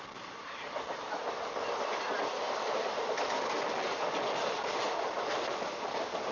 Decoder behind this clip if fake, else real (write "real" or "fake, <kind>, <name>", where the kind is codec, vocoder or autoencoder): real